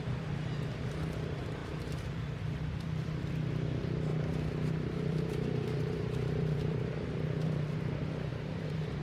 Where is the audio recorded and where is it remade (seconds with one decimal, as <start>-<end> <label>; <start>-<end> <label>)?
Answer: 0.0-4.1 remade; 4.1-4.7 recorded; 4.7-9.0 remade